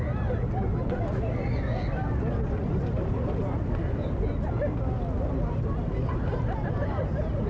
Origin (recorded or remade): recorded